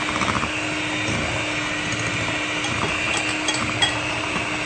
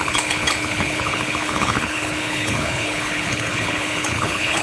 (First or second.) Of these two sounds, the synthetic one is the second